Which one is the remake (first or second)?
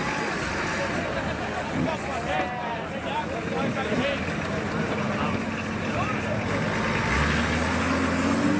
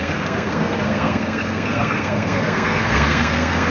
second